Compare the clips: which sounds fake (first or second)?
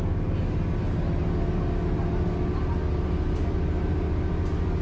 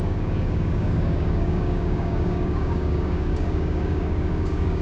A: second